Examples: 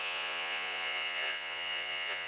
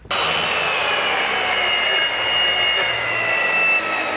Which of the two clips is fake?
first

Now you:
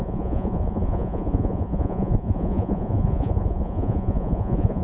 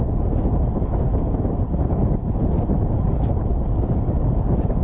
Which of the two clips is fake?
first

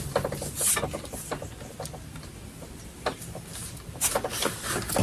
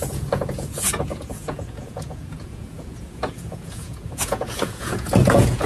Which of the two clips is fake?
second